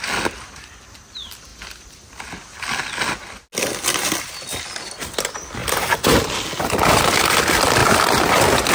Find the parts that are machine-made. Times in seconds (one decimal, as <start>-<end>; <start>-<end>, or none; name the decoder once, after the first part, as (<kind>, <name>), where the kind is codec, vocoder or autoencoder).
5.6-6.2 (vocoder, BigVGAN v2)